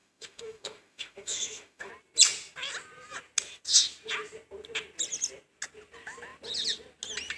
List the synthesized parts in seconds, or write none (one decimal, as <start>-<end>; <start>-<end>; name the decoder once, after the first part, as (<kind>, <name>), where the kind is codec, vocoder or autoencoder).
0.0-1.9 (autoencoder, DAC-VAE)